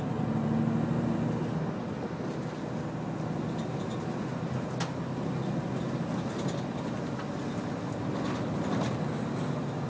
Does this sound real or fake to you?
real